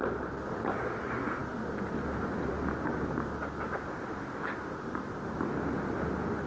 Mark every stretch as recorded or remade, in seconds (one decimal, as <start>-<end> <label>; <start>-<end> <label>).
0.0-6.5 recorded

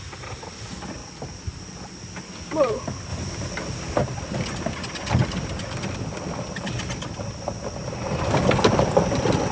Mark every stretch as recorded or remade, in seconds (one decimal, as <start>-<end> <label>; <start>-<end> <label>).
0.0-1.0 recorded; 1.0-2.0 remade; 2.0-9.5 recorded

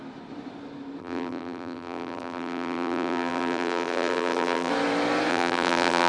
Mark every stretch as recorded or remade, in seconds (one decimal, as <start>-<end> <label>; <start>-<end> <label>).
0.0-1.0 recorded; 1.0-4.7 remade; 4.7-5.3 recorded; 5.3-6.1 remade